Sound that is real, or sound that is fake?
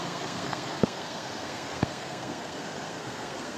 fake